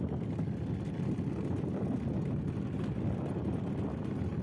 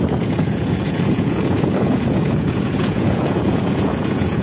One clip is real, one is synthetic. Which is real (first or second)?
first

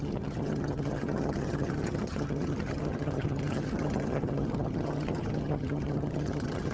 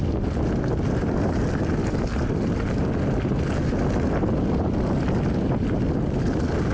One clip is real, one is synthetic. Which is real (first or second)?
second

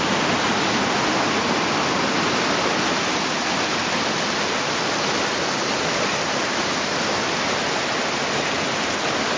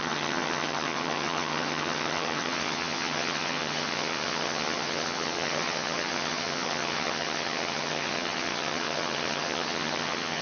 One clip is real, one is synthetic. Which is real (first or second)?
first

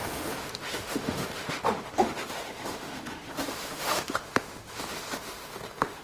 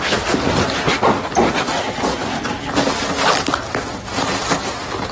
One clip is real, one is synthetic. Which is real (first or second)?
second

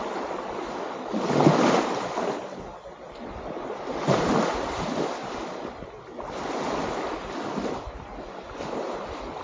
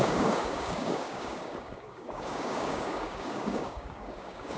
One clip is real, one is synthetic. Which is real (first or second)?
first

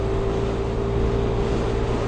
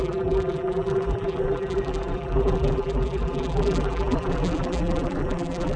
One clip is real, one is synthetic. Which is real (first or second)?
first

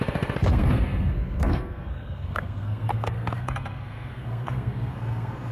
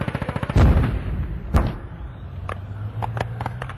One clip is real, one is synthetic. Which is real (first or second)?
second